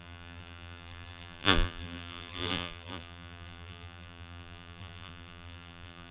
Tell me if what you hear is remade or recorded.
remade